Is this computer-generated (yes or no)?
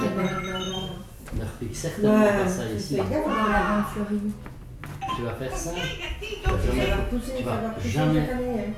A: no